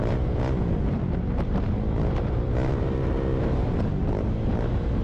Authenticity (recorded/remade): recorded